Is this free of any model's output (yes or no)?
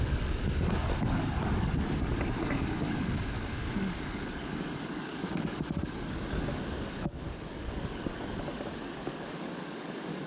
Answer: no